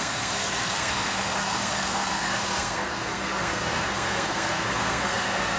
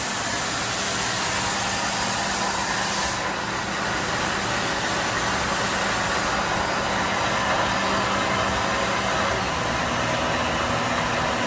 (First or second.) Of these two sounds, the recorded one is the second